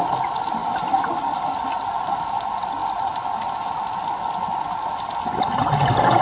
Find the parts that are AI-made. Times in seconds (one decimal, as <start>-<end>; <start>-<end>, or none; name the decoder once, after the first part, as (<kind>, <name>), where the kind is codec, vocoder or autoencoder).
none